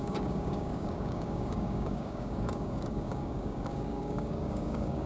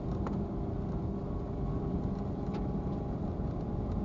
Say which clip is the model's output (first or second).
first